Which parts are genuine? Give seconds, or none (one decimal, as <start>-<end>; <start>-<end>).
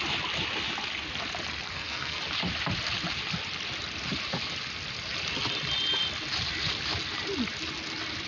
0.0-1.7; 2.2-8.3